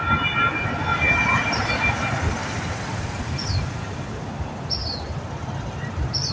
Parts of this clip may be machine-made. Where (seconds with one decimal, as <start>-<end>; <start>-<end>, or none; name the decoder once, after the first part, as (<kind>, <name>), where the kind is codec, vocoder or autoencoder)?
0.9-1.7 (vocoder, BigVGAN v2); 2.4-3.7